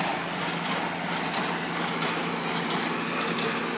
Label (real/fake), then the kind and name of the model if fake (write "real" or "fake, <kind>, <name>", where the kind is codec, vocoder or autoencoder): real